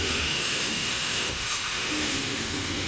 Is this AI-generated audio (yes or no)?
yes